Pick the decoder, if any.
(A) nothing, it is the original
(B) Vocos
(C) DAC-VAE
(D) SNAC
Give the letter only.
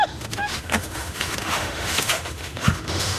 C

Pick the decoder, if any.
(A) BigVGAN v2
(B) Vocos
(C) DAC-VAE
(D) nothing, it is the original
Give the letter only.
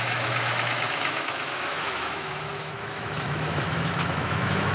C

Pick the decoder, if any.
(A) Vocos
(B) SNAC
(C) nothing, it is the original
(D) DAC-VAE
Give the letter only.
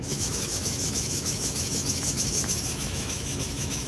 D